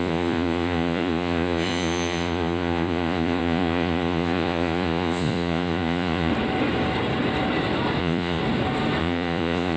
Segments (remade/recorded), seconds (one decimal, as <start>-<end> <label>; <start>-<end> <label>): 0.0-6.3 remade; 6.3-8.0 recorded; 8.0-8.4 remade; 8.4-9.0 recorded; 9.0-9.8 remade